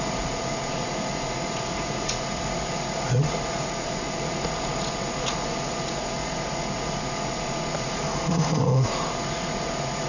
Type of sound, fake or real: fake